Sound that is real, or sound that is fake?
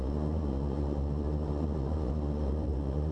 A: fake